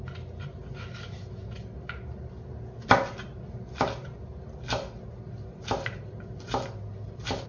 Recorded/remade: recorded